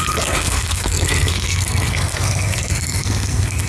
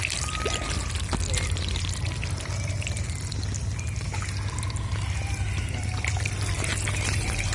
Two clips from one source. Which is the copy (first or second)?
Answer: first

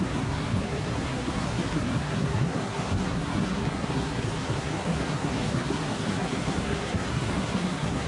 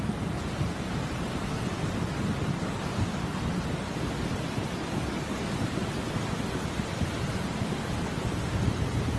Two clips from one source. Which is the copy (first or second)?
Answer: first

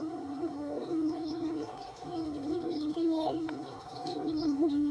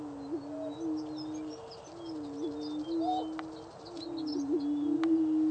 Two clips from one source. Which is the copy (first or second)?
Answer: first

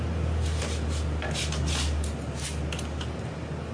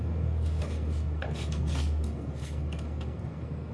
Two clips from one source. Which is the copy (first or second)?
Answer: second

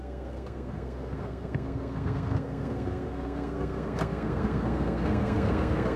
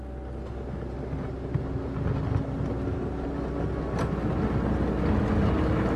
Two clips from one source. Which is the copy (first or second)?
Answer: first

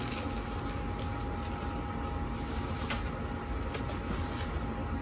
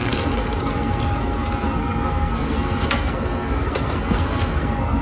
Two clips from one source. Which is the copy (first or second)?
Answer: second